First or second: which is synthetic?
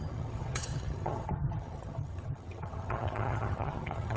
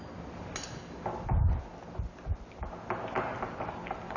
first